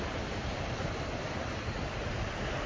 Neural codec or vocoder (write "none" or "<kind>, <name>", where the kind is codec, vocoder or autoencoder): none